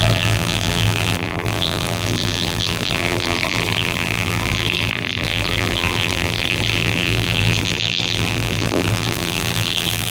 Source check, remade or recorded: remade